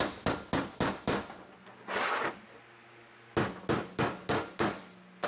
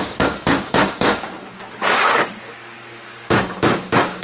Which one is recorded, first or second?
first